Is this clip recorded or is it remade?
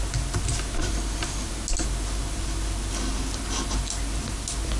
recorded